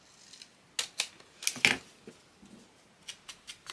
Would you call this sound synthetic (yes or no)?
no